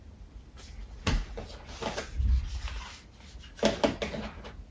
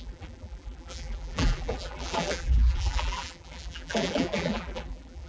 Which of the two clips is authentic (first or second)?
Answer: first